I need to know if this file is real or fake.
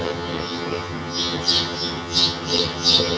fake